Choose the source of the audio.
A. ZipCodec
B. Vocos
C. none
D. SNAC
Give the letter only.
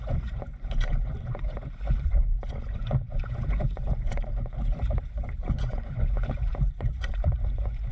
B